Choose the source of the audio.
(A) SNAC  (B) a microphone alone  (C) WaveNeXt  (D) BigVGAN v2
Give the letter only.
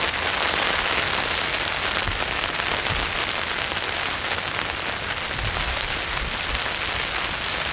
B